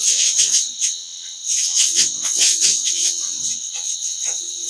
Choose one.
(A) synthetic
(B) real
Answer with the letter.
A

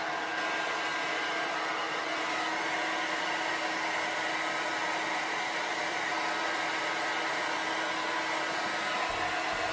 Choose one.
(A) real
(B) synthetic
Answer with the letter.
A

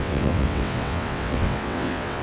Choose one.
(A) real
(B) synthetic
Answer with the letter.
B